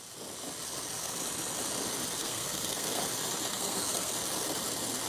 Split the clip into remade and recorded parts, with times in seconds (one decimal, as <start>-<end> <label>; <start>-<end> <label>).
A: 0.0-2.2 recorded; 2.2-3.0 remade; 3.0-3.5 recorded; 3.5-4.1 remade; 4.1-5.1 recorded